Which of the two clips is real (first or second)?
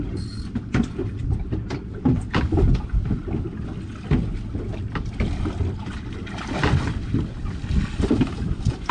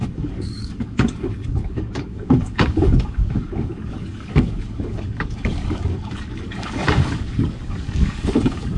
first